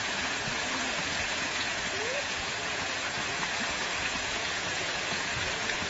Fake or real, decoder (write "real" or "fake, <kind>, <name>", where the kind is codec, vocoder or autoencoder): fake, vocoder, Vocos